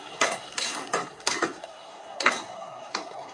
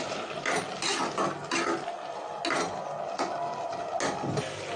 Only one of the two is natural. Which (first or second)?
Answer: second